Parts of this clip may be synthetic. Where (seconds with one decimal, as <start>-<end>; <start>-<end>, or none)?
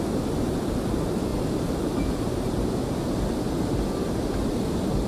none